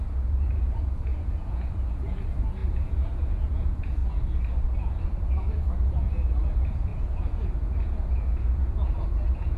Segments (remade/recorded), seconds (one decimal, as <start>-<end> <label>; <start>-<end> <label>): 0.0-4.0 remade; 4.0-5.2 recorded; 5.2-9.6 remade